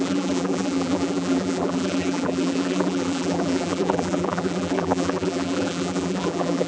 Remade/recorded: remade